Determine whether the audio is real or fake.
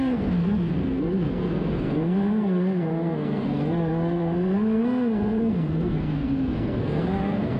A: fake